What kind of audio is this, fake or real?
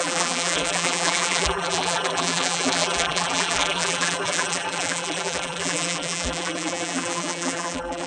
fake